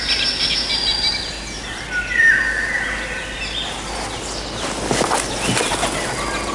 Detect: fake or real real